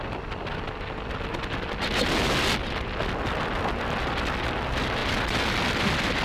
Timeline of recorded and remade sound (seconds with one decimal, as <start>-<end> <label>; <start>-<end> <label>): 0.0-6.2 recorded